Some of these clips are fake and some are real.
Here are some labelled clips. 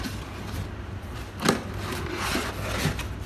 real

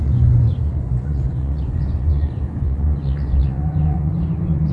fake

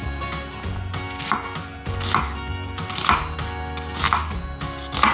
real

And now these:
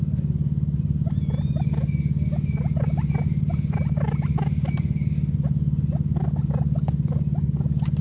real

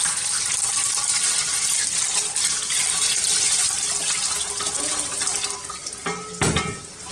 real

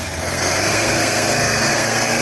fake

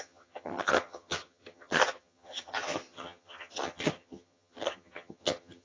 fake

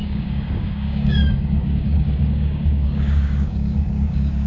fake